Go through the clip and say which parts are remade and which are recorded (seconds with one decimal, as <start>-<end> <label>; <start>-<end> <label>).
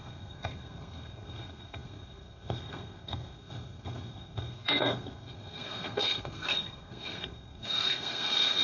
0.0-8.6 remade